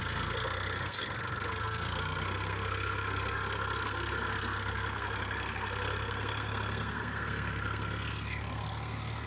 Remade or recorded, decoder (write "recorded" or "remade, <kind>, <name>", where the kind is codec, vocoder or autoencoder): remade, codec, SNAC